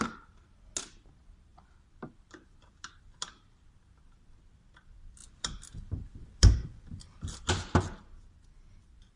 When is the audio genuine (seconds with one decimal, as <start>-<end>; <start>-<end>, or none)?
0.0-1.5; 3.7-5.2; 7.5-9.2